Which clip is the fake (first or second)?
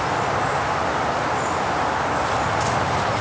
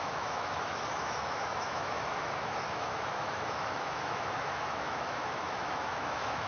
second